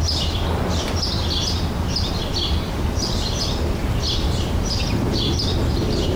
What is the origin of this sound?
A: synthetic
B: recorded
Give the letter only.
B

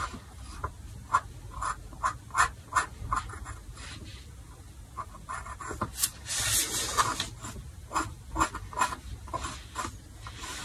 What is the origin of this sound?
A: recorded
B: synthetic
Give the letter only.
A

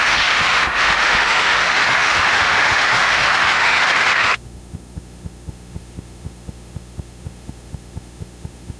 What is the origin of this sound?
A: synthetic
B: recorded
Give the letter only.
A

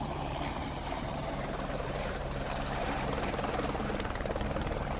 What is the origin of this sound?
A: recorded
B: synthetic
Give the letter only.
B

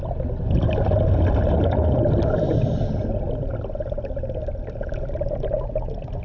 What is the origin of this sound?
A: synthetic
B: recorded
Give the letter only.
B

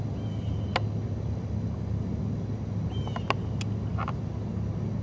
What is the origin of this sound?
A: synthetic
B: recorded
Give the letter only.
B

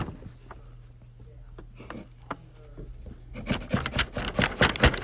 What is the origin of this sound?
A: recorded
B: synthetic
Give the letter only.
A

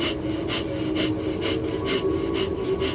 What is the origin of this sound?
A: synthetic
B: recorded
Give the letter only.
B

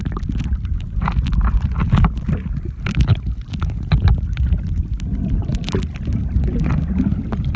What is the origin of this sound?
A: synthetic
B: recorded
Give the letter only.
B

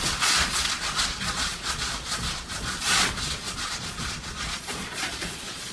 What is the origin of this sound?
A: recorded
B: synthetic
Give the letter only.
B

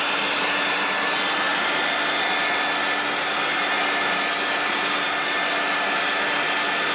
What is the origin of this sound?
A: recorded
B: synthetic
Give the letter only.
A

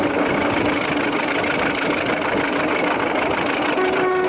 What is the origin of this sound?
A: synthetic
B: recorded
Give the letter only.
B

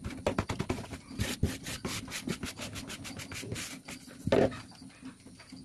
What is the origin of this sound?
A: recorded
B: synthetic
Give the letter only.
A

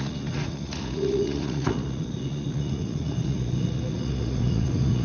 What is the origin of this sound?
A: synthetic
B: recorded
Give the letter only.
A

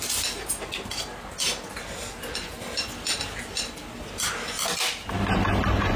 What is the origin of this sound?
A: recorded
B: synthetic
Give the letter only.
A